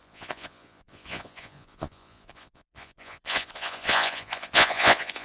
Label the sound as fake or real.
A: fake